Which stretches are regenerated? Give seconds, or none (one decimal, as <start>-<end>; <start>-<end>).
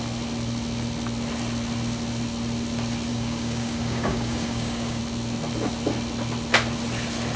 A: 3.1-5.0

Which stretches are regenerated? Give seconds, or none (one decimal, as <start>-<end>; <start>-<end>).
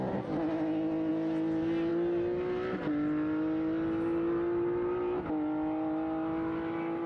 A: none